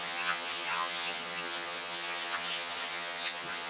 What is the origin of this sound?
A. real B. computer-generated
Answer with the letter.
B